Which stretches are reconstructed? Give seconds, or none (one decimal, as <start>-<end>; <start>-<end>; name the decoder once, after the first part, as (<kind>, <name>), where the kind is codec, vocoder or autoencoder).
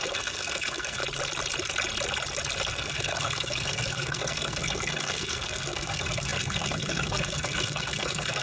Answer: 0.0-1.0 (codec, SNAC); 2.7-8.4